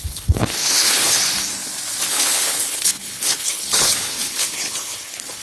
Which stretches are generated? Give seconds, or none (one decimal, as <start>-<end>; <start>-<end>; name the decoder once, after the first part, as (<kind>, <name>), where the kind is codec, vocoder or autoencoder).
0.0-1.2 (codec, HILCodec); 2.1-5.4